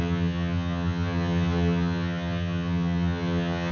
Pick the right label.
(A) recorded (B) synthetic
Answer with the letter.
B